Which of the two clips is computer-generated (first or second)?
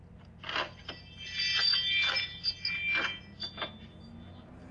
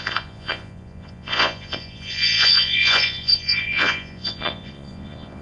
second